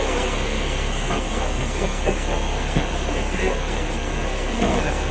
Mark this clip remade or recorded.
remade